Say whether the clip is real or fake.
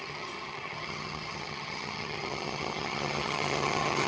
fake